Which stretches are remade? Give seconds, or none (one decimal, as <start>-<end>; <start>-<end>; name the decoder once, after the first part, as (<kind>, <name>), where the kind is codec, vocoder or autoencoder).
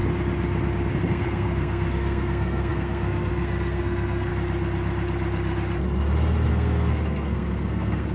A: 0.9-4.3 (codec, SNAC); 6.5-8.1